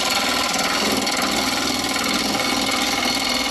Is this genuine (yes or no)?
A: yes